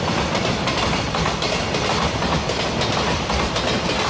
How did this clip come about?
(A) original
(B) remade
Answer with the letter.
A